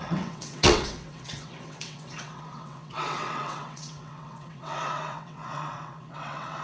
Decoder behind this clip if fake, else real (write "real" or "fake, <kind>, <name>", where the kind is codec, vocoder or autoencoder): fake, vocoder, WaveNeXt